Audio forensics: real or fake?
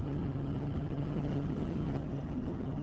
fake